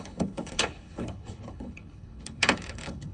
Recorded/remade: remade